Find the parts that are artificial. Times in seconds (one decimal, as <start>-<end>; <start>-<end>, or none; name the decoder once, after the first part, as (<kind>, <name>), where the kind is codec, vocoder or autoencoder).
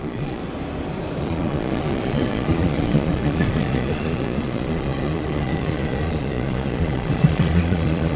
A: 0.0-0.4 (vocoder, Vocos); 1.2-8.2